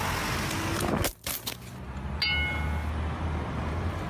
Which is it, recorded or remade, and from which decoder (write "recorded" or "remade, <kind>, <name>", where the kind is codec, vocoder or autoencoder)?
recorded